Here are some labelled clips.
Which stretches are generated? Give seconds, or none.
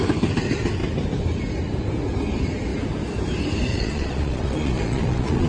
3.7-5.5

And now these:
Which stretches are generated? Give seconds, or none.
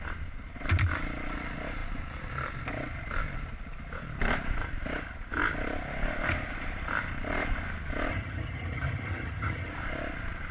8.1-9.7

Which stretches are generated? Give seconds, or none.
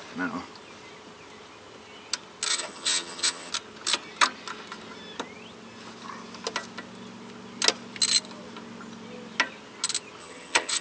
2.5-3.5; 10.2-10.8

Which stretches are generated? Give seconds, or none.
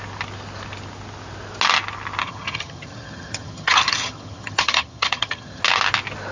2.2-5.6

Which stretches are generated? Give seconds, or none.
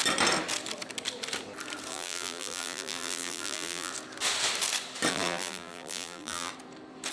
1.9-3.9; 5.1-6.5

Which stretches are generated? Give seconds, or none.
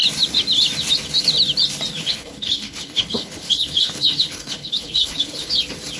1.9-5.5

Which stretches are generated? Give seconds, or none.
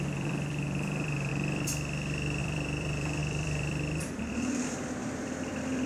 0.0-1.3; 2.4-5.9